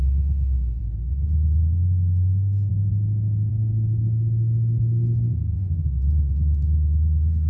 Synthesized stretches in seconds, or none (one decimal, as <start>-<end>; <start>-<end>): 0.0-0.8; 1.6-2.7; 3.5-7.5

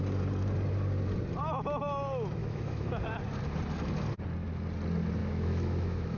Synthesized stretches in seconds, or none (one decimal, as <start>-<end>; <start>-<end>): 2.4-3.0; 5.2-6.2

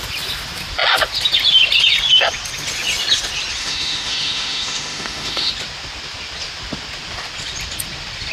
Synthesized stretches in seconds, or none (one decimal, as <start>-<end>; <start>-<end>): 3.6-5.5

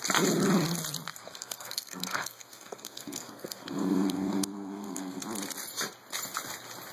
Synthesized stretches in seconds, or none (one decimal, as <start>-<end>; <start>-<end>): 1.1-5.2

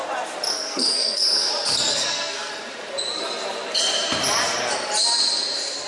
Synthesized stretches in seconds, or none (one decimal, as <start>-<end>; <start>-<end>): 0.5-1.5; 1.9-2.5

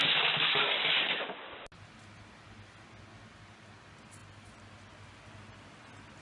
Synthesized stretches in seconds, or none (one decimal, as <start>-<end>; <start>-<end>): none